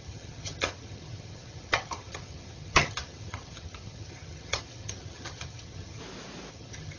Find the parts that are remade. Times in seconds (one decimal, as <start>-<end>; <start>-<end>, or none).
0.0-6.0; 6.5-7.0